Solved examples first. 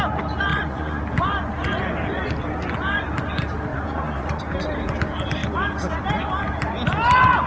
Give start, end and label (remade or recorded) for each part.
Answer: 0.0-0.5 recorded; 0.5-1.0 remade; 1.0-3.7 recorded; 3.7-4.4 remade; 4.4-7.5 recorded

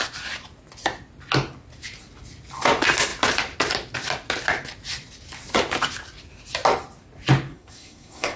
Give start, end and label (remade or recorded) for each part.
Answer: 0.0-7.5 recorded; 7.5-8.4 remade

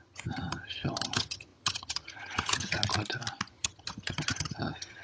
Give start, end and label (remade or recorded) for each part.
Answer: 0.0-2.8 remade; 2.8-3.5 recorded; 3.5-5.0 remade

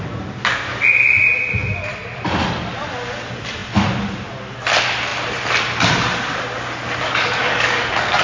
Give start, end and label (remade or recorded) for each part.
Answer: 0.0-7.0 recorded; 7.0-8.2 remade

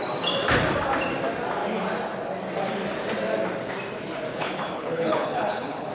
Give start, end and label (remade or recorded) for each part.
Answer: 0.0-4.3 recorded; 4.3-5.9 remade

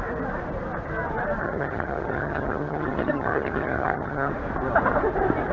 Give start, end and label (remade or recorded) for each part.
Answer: 0.0-1.4 recorded; 1.4-4.3 remade; 4.3-5.5 recorded